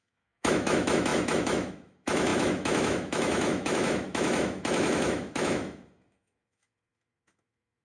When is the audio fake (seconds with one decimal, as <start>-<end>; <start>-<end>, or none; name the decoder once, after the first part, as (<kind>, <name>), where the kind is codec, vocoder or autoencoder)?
0.0-7.8 (autoencoder, DAC-VAE)